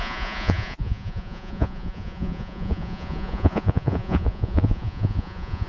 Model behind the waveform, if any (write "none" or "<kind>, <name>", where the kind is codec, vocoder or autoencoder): vocoder, Vocos